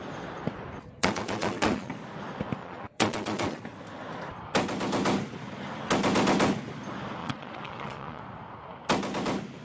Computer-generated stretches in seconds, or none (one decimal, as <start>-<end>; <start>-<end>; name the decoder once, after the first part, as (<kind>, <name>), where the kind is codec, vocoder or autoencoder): 1.0-1.9 (vocoder, Vocos); 2.6-3.6; 7.2-8.2